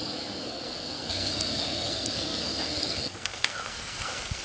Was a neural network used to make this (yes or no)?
yes